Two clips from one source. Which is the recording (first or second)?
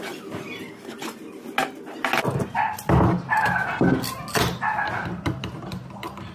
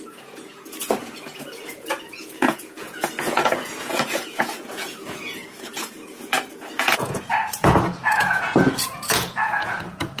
first